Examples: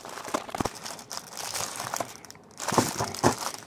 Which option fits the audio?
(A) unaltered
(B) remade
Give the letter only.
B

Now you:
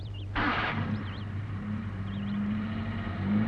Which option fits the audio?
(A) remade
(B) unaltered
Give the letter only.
A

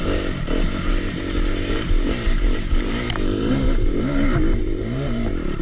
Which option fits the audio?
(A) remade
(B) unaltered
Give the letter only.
A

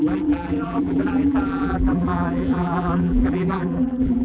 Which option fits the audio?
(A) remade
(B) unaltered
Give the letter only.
A